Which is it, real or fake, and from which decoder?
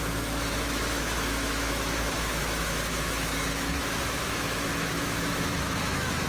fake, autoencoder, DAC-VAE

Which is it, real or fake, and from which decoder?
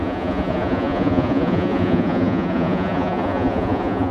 fake, vocoder, Vocos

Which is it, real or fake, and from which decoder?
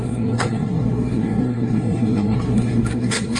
fake, codec, SNAC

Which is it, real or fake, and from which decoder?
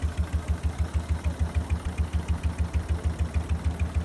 real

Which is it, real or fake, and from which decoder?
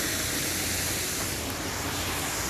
real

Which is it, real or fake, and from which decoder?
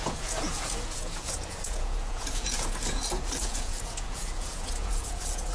fake, vocoder, Vocos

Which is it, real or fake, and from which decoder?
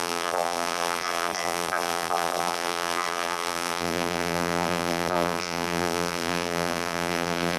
fake, vocoder, BigVGAN v2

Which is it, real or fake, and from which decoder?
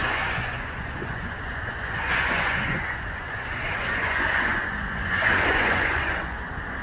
fake, vocoder, Vocos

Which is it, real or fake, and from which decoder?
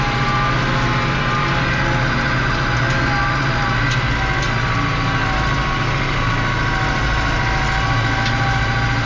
real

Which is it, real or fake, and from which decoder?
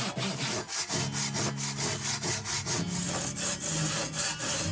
real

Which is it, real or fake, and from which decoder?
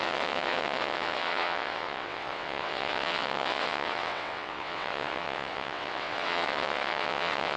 fake, vocoder, WaveNeXt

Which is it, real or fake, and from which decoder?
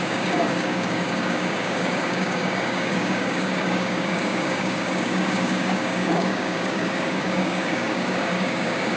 fake, codec, DAC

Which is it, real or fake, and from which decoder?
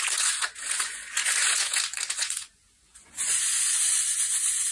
fake, vocoder, Vocos